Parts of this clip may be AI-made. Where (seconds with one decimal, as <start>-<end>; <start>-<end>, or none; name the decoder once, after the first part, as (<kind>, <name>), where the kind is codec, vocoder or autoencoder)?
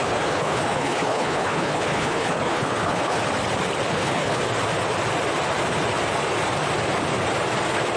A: 0.0-3.2 (codec, HILCodec); 3.9-4.4